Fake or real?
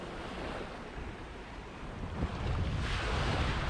real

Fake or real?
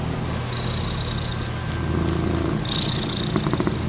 real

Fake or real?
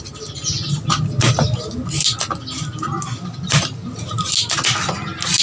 real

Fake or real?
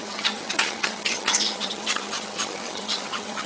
fake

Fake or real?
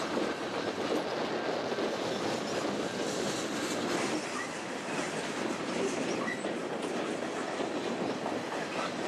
real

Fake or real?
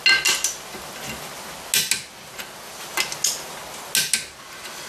real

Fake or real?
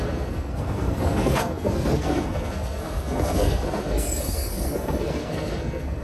fake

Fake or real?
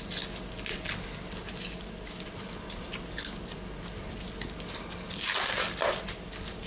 real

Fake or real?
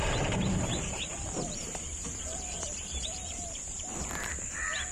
fake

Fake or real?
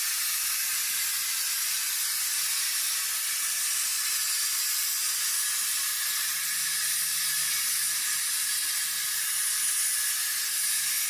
real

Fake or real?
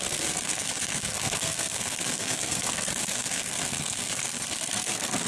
fake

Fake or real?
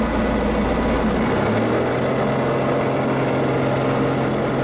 real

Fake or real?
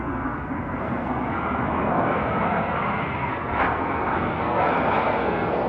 fake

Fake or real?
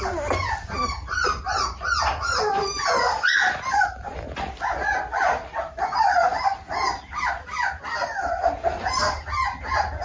real